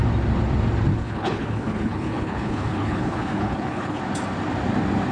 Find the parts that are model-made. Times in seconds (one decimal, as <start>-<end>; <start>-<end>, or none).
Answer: 0.9-4.0